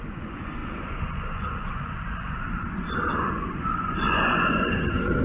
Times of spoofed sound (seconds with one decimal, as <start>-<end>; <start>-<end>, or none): 0.0-5.2